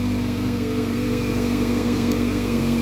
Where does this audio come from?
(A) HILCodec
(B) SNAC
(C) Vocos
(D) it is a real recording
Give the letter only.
B